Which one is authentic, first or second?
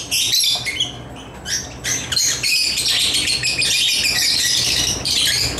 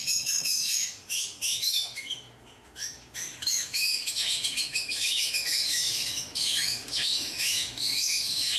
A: first